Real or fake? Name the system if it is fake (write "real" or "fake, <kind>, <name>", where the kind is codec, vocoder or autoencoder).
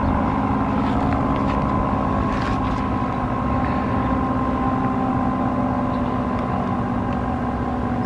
real